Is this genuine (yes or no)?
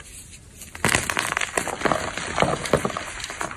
yes